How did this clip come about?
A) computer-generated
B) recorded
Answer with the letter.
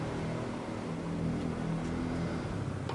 B